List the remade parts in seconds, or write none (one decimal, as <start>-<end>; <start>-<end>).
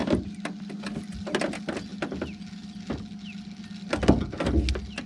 none